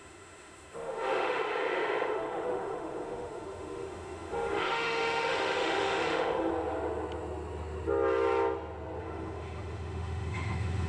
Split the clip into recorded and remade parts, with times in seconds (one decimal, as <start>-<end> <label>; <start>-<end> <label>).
0.0-6.5 remade; 6.5-9.0 recorded; 9.0-10.9 remade